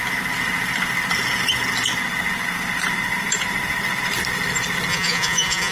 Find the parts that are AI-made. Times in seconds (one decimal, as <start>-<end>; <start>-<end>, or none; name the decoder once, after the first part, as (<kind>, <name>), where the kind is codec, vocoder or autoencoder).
4.9-5.7 (vocoder, Vocos)